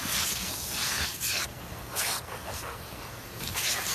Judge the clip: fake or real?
fake